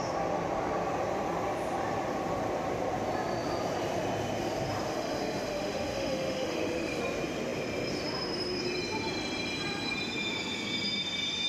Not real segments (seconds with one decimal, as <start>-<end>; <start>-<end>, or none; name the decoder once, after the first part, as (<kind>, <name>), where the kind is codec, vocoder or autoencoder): 4.9-7.0 (autoencoder, DAC-VAE)